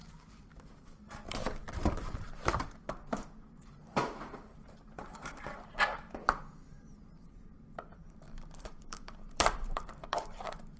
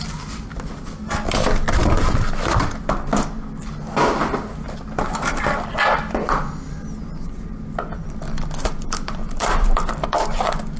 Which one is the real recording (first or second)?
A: second